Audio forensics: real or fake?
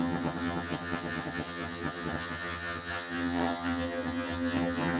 fake